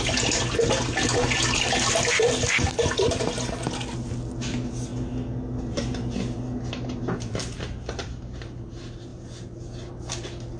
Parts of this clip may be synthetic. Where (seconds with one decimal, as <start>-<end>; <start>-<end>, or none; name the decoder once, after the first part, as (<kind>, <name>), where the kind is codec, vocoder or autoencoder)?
none